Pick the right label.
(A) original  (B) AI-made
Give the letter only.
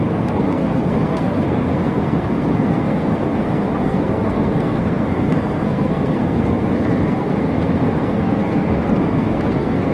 B